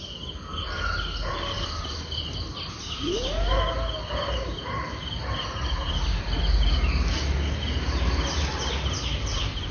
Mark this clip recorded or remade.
recorded